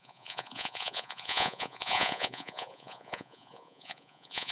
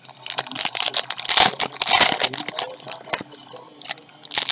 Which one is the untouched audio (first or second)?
second